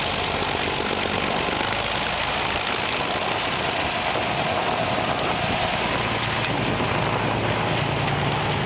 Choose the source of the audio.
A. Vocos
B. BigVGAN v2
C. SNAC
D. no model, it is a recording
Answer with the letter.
D